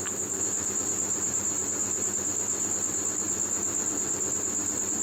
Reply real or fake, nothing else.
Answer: real